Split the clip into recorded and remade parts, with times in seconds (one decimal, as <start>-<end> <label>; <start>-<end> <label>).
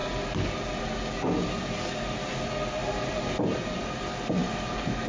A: 0.0-5.1 recorded